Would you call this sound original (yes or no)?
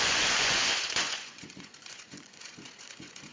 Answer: no